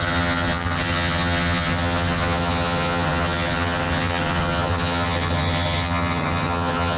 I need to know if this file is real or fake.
fake